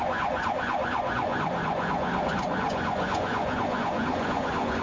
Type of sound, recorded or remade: remade